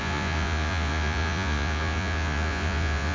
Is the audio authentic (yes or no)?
no